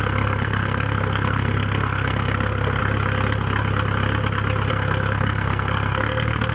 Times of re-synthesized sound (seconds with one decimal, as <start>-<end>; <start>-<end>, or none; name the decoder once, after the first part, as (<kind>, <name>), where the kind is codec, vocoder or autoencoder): 0.0-2.8 (codec, SNAC); 4.7-6.5